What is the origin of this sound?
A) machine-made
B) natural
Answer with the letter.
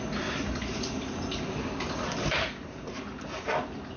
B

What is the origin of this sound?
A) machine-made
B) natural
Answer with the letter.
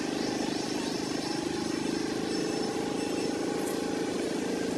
B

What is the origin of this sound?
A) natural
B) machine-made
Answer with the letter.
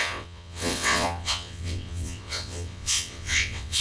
B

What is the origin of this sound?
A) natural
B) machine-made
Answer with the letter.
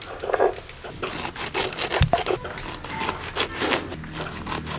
A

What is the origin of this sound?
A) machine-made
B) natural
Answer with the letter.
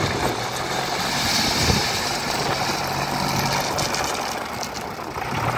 B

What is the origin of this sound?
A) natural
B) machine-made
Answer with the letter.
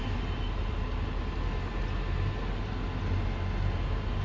A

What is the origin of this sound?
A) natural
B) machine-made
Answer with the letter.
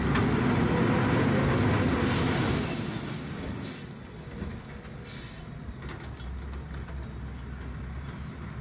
A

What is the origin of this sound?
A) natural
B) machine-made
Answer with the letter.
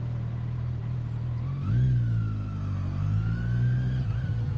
A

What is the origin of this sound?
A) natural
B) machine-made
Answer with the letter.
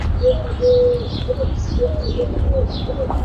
A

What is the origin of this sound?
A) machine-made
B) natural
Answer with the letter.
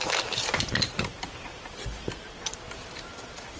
B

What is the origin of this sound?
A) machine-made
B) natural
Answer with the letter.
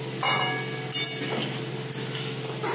B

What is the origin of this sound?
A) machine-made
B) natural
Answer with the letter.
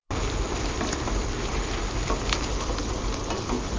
A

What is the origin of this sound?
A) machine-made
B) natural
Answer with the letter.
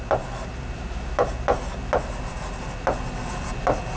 B